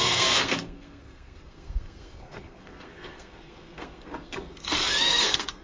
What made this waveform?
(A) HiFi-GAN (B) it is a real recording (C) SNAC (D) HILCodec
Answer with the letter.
C